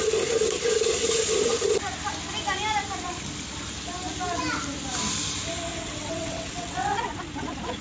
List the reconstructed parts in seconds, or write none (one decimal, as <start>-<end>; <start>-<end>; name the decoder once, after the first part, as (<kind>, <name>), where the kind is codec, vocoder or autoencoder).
5.7-7.2 (vocoder, WaveNeXt)